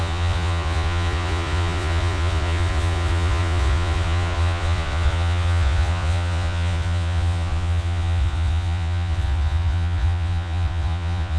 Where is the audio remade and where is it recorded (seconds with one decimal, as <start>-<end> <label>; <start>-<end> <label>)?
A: 0.0-11.4 remade